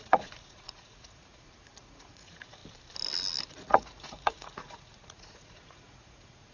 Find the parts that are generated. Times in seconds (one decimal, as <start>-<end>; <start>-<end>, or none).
0.0-2.6; 3.5-6.5